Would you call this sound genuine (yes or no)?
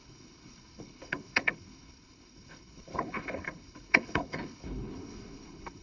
no